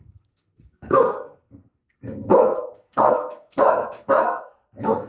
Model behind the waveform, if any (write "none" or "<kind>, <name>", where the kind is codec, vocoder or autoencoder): codec, SNAC